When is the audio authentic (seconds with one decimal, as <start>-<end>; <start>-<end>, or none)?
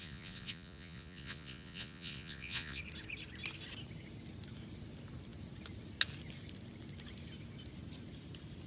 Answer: 2.8-8.7